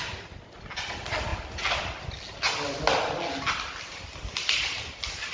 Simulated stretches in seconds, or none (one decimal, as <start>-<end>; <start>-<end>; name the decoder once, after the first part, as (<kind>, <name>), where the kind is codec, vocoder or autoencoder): none